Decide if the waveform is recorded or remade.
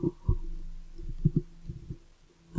recorded